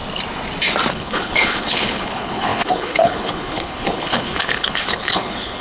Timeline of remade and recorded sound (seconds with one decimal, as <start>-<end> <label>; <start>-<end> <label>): 0.0-0.9 recorded; 0.9-5.6 remade